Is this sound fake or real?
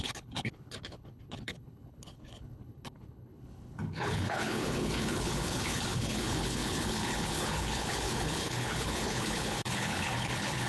fake